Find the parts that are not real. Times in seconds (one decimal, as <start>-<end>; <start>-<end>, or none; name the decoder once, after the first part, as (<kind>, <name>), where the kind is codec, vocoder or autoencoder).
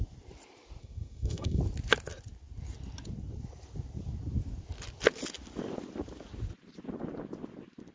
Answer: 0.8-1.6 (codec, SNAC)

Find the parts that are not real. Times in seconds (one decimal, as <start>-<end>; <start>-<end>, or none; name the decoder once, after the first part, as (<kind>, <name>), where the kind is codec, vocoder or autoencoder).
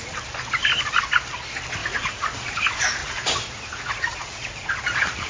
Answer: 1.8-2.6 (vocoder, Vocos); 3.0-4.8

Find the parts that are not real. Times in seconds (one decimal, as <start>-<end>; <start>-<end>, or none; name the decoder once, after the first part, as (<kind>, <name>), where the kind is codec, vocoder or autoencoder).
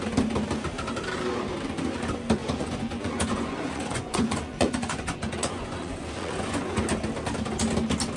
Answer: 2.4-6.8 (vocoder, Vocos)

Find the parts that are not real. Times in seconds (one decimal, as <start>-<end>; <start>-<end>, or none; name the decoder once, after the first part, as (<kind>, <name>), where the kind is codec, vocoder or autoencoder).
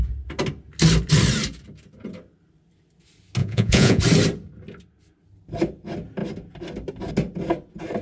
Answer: 3.4-4.0 (vocoder, Vocos)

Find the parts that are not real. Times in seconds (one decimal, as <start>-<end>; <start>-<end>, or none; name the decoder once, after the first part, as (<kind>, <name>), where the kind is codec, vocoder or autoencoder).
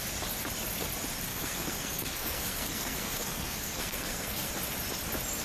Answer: 1.3-4.5 (codec, SNAC)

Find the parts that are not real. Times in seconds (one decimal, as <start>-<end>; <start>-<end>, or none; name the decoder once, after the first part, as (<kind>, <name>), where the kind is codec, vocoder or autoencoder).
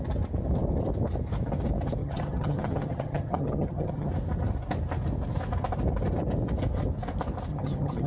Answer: 2.0-4.1 (vocoder, HiFi-GAN); 7.5-8.1